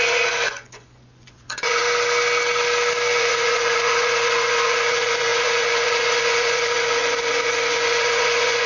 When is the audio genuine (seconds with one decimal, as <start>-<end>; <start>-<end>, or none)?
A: 1.8-3.2